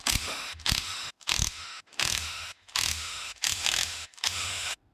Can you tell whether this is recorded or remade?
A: remade